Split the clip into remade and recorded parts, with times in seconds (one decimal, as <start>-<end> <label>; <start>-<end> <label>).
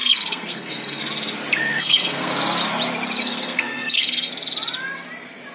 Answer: 0.0-1.0 remade; 1.0-1.6 recorded; 1.6-2.3 remade; 2.3-3.2 recorded; 3.2-4.3 remade; 4.3-5.5 recorded